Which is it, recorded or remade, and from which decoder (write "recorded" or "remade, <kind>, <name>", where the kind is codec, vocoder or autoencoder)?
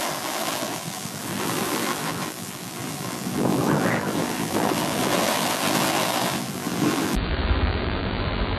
remade, vocoder, BigVGAN v2